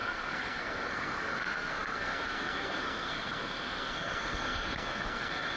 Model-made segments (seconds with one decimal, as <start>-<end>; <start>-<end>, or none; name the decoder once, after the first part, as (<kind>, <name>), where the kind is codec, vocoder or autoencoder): 0.0-5.6 (codec, SNAC)